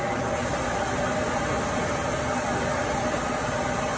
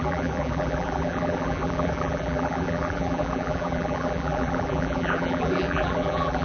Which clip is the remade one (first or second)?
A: second